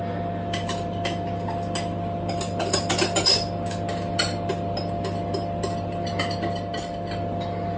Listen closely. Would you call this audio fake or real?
real